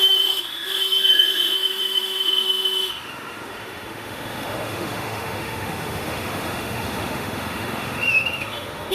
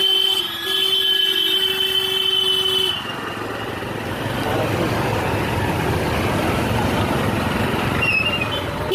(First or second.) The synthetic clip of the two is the first